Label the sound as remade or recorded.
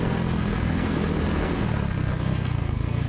remade